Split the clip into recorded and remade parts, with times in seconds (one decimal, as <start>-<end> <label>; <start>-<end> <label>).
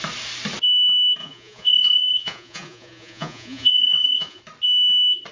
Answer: 0.0-1.2 recorded; 1.2-4.4 remade; 4.4-5.3 recorded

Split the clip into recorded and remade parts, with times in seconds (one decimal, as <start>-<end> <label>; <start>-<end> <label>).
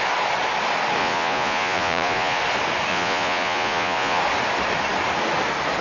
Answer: 0.0-1.0 recorded; 1.0-2.4 remade; 2.4-2.9 recorded; 2.9-4.2 remade; 4.2-5.8 recorded